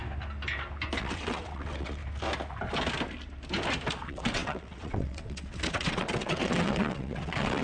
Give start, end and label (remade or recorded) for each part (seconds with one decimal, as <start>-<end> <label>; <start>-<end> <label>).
0.0-1.0 recorded; 1.0-2.0 remade; 2.0-4.0 recorded; 4.0-7.6 remade